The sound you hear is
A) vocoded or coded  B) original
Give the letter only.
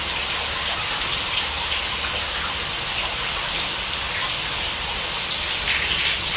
B